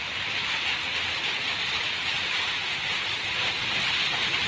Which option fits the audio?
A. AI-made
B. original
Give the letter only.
B